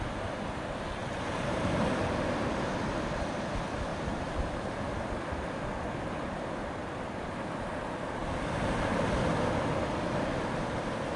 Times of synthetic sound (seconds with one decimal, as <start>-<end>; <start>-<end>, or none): 1.0-2.2; 3.9-5.2; 6.8-7.3; 8.2-9.3